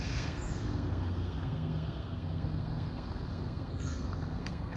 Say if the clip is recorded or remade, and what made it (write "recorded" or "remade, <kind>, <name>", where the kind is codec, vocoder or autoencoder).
remade, codec, SNAC